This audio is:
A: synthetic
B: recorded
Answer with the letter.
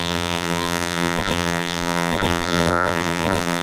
A